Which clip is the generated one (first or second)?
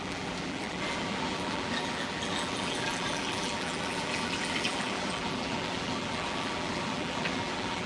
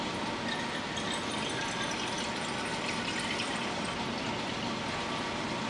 first